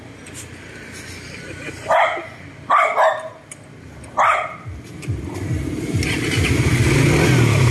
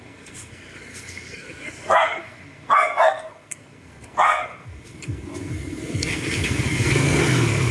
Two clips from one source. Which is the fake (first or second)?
second